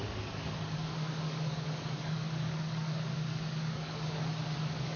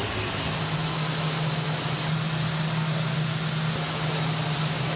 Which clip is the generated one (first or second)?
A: first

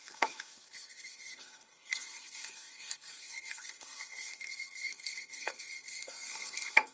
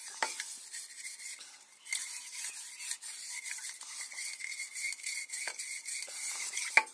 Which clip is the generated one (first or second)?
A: first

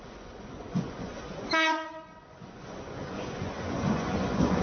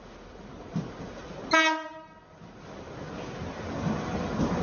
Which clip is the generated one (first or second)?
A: first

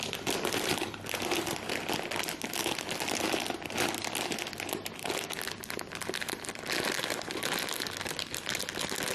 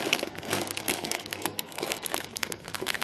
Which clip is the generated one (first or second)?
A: second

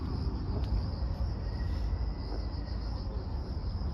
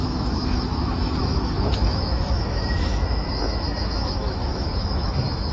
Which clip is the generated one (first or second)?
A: second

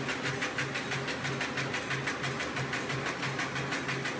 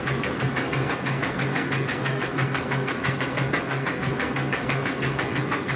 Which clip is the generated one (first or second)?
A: second